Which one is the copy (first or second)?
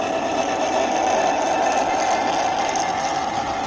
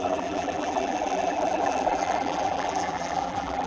second